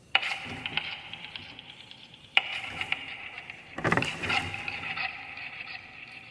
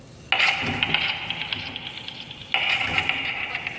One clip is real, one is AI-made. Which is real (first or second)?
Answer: second